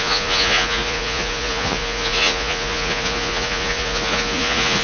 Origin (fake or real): fake